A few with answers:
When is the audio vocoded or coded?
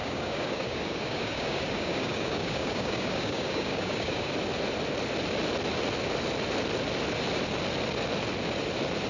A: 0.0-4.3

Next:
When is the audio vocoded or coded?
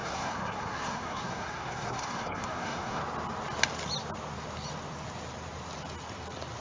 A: 0.0-3.0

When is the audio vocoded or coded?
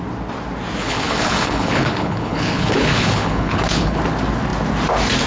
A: 0.8-4.0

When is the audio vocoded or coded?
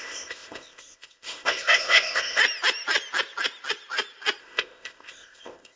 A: 0.0-2.4; 4.4-5.8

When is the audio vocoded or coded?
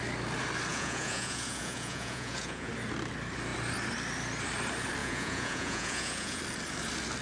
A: 0.7-2.7; 5.0-6.4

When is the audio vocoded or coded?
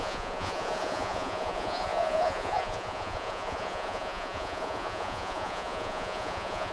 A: 0.0-6.7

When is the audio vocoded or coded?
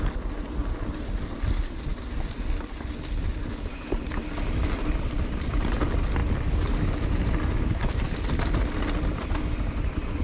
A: none